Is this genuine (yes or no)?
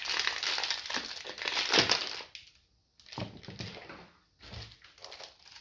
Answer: yes